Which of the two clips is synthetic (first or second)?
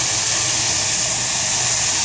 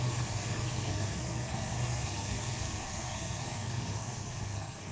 second